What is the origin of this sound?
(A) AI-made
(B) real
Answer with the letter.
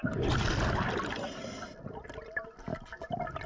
B